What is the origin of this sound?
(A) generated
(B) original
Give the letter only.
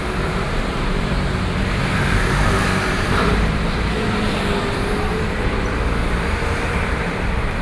A